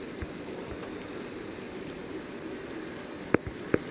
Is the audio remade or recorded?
recorded